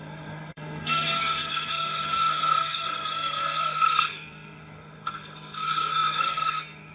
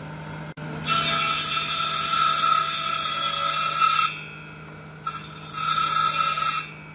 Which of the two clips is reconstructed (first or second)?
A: first